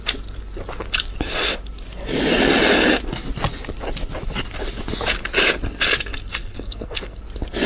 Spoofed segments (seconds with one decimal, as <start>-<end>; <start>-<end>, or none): 6.3-7.2